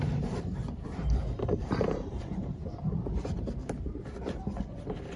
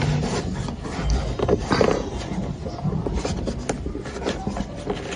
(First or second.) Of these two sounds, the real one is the second